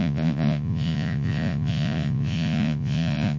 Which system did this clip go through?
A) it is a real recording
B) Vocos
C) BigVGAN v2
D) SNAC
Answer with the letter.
B